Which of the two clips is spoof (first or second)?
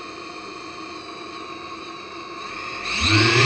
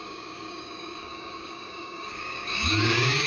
second